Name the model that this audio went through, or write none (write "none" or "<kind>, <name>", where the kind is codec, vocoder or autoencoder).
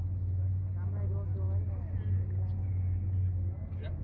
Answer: none